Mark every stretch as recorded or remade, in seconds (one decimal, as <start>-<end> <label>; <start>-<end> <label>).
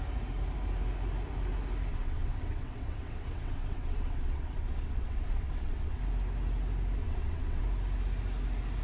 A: 0.0-1.9 recorded; 1.9-6.0 remade; 6.0-7.0 recorded; 7.0-7.6 remade; 7.6-8.8 recorded